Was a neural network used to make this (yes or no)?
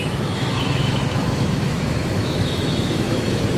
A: yes